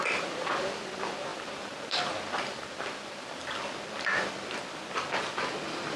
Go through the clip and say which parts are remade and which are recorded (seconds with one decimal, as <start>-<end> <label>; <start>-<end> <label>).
0.0-1.3 recorded; 1.3-4.6 remade; 4.6-6.0 recorded